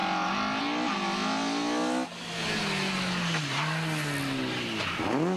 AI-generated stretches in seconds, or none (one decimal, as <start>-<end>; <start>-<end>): none